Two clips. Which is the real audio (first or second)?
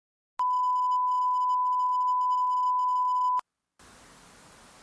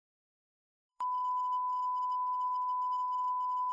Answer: first